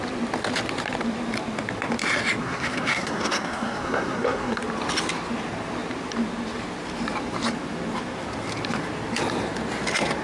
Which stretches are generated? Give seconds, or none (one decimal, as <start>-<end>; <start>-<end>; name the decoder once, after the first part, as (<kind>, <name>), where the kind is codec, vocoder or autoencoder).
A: 2.4-4.6 (codec, SNAC)